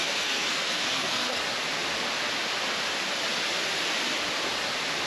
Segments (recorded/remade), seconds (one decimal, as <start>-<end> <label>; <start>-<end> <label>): 0.0-1.4 remade; 1.4-5.1 recorded